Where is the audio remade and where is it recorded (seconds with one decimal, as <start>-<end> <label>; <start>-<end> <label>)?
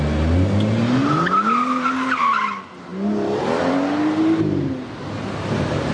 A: 0.0-5.9 recorded